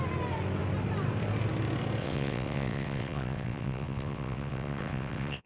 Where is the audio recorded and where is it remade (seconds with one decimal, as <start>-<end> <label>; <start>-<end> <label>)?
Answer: 0.0-2.0 recorded; 2.0-5.5 remade